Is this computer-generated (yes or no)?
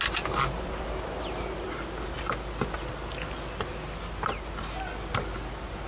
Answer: no